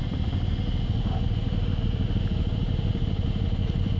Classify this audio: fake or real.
real